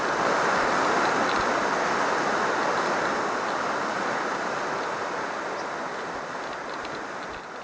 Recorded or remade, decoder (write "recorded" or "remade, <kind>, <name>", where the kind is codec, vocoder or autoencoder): recorded